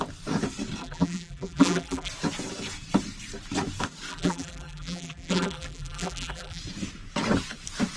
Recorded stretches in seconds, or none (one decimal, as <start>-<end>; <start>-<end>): 0.0-0.8; 2.1-4.1; 6.6-8.0